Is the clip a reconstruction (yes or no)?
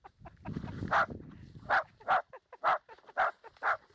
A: no